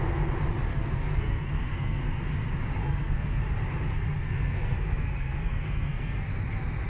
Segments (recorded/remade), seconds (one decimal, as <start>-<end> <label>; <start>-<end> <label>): 0.0-0.7 recorded; 0.7-2.0 remade; 2.0-2.8 recorded; 2.8-3.4 remade; 3.4-3.9 recorded; 3.9-6.3 remade; 6.3-6.9 recorded